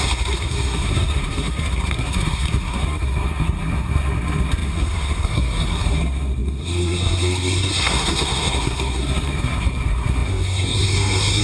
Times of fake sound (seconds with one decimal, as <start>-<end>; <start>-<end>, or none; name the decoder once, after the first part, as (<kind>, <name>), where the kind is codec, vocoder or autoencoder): 0.0-11.4 (codec, SNAC)